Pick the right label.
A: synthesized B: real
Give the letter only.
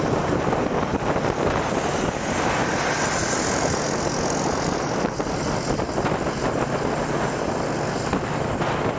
B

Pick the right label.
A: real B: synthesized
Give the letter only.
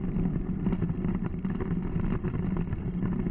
A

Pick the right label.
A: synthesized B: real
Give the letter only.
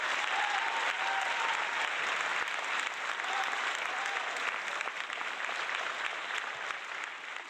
B